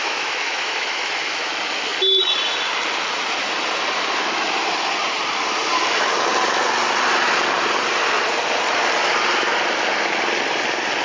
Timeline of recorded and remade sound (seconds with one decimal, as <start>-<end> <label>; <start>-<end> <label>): 0.0-1.5 remade; 1.5-11.0 recorded